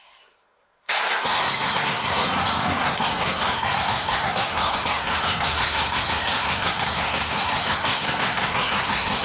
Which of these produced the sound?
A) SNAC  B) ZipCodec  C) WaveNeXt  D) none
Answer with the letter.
A